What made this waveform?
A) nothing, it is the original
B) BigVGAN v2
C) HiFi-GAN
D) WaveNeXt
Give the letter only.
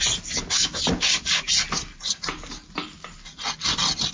A